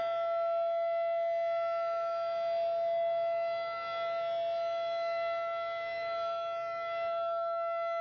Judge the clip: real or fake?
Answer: real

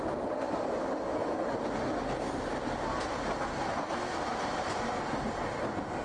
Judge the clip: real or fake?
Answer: real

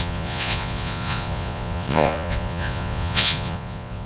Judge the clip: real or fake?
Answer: fake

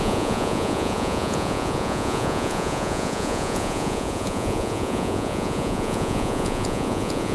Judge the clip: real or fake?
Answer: fake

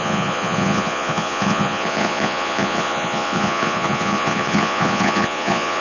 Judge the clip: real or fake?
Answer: fake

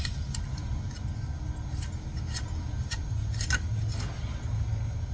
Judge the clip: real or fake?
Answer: real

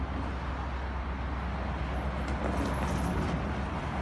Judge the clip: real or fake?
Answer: real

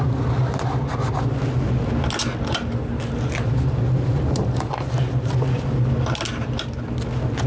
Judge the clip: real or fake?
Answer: real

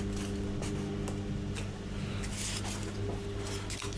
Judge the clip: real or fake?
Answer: real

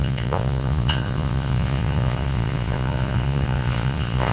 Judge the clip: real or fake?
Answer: fake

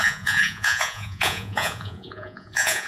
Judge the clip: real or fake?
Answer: fake